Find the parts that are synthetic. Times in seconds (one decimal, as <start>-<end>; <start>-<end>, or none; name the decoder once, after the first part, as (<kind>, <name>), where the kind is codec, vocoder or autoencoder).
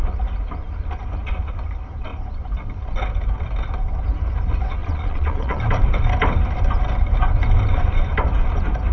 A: 4.8-5.6 (vocoder, Vocos)